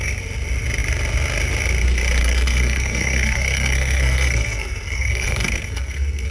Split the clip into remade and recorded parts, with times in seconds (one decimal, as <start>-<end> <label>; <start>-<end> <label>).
0.0-2.2 recorded; 2.2-6.3 remade